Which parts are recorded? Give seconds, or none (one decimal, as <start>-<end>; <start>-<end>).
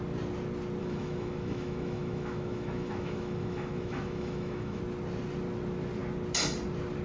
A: 0.0-0.8; 4.8-7.0